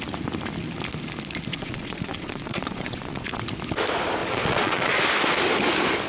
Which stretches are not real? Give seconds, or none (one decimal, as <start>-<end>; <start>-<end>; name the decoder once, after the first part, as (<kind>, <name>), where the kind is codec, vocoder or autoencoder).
1.5-3.4 (vocoder, Vocos); 4.2-5.0